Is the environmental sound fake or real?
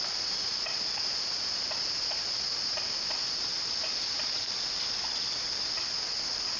real